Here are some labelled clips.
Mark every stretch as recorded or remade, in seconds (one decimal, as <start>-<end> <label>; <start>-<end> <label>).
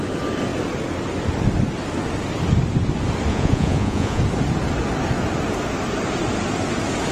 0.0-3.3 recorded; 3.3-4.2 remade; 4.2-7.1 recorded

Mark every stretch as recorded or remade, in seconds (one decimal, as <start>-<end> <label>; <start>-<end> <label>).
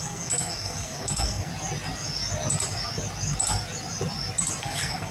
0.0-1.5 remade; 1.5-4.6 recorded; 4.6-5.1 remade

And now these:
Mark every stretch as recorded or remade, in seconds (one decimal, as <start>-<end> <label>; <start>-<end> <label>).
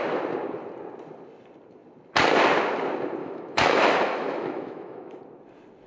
0.0-3.2 recorded; 3.2-5.2 remade; 5.2-5.9 recorded